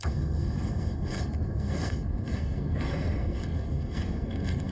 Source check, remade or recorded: remade